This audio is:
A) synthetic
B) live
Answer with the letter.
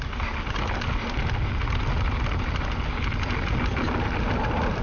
B